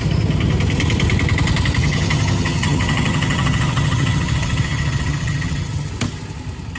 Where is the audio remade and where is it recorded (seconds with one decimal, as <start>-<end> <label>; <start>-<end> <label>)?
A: 0.0-1.8 recorded; 1.8-5.9 remade; 5.9-6.8 recorded

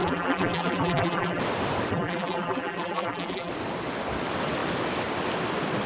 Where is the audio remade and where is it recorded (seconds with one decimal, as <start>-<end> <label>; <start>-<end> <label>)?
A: 0.0-1.4 remade; 1.4-1.9 recorded; 1.9-3.5 remade; 3.5-5.9 recorded

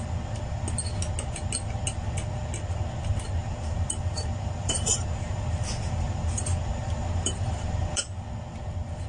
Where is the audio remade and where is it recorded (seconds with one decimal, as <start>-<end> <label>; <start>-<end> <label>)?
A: 0.0-3.4 recorded; 3.4-8.0 remade; 8.0-9.1 recorded

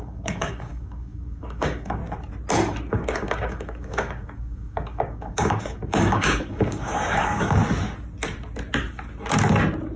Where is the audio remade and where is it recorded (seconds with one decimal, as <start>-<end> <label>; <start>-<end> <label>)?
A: 0.0-2.0 remade; 2.0-2.9 recorded; 2.9-7.6 remade; 7.6-10.0 recorded

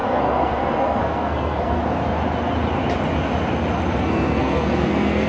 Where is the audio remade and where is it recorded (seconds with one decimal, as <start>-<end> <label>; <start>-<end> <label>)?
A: 0.0-1.8 remade; 1.8-4.0 recorded; 4.0-5.3 remade

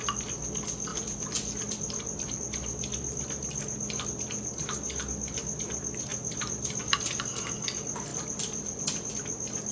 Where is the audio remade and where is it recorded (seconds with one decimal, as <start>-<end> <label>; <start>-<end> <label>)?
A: 0.0-0.9 recorded; 0.9-2.4 remade; 2.4-8.1 recorded; 8.1-9.1 remade; 9.1-9.7 recorded

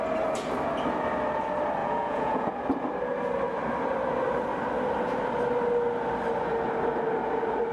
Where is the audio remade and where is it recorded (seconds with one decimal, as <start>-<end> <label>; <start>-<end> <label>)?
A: 0.0-1.8 recorded; 1.8-2.5 remade; 2.5-7.7 recorded

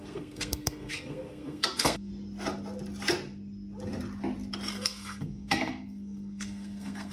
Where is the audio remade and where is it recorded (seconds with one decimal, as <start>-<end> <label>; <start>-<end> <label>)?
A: 0.0-2.1 remade; 2.1-4.7 recorded; 4.7-7.1 remade